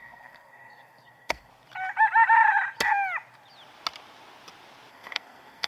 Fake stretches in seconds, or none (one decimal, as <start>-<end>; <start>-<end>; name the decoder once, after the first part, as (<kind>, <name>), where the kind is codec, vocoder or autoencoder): 0.0-1.5 (codec, SNAC); 4.9-5.7